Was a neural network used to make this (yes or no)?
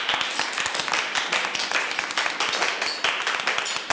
no